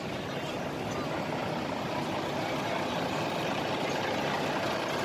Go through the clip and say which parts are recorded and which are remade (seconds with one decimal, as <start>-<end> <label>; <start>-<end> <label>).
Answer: 0.0-1.4 recorded; 1.4-4.4 remade; 4.4-5.0 recorded